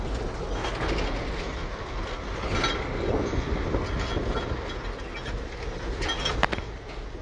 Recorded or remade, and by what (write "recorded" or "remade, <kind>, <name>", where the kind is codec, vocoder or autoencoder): recorded